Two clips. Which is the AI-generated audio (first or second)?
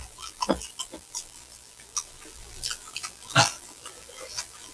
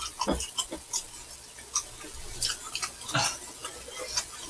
first